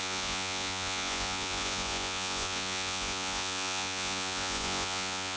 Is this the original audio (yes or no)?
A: no